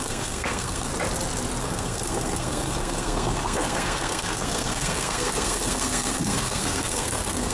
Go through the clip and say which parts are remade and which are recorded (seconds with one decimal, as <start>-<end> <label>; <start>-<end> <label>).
0.0-0.9 remade; 0.9-1.6 recorded; 1.6-7.5 remade